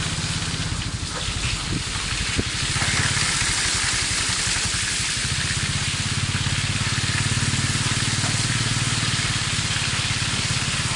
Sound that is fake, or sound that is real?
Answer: real